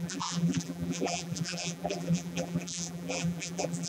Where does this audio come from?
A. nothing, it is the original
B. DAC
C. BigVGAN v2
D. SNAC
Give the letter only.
C